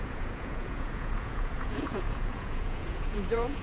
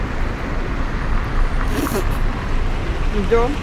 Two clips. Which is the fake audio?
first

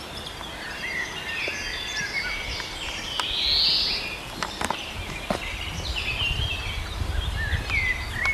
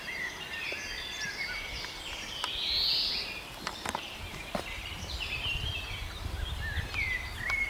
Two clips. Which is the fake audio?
second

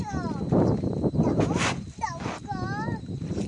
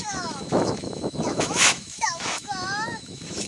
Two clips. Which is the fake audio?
second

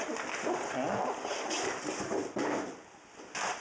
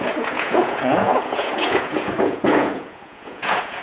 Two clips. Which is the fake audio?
second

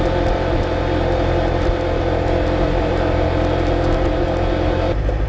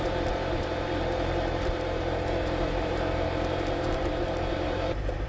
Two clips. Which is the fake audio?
second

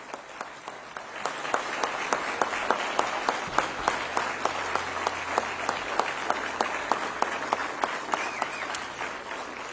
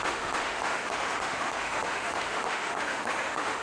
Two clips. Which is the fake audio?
second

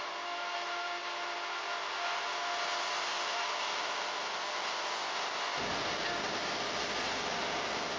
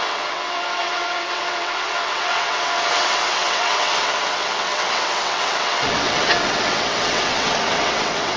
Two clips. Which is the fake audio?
second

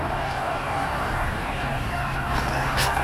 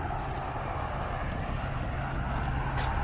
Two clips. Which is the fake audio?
first